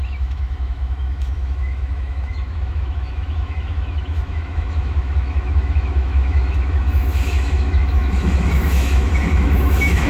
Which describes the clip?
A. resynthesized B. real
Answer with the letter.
A